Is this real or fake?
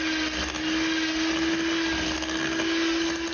real